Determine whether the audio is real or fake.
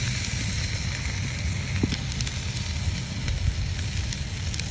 real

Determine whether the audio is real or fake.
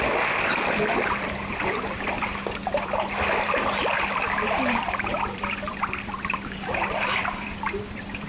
fake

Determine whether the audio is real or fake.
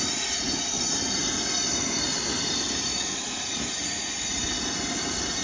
real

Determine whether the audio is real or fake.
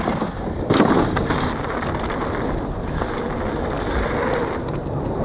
real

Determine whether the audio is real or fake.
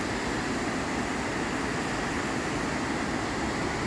real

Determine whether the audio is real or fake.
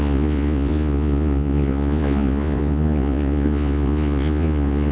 fake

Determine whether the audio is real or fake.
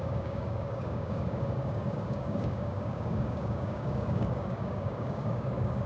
fake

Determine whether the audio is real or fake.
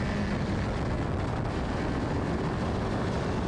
real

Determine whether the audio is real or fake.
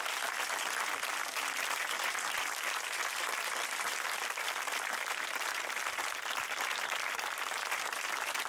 real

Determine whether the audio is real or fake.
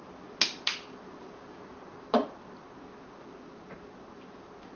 real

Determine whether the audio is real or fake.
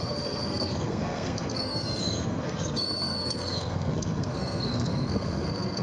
fake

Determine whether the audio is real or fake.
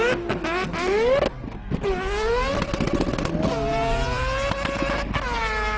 real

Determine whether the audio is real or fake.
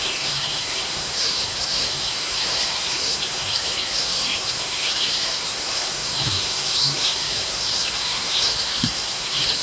fake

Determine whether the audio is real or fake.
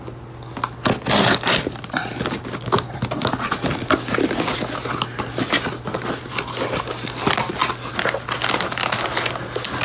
real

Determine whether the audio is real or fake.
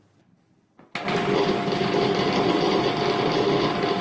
real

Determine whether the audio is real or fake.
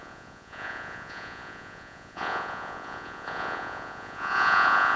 fake